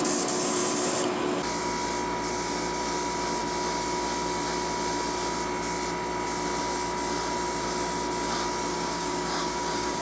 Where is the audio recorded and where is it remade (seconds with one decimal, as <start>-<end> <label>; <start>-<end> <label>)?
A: 0.0-8.7 recorded; 8.7-10.0 remade